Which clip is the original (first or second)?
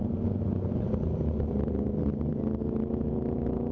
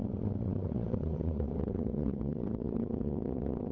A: first